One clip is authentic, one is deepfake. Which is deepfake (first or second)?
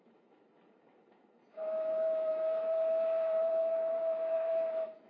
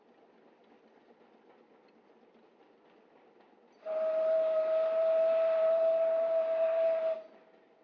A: first